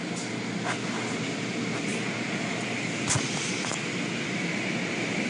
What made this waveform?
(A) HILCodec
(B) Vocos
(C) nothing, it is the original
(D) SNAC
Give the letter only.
C